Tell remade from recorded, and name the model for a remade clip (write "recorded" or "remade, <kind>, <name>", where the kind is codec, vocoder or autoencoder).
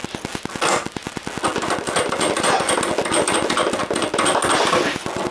recorded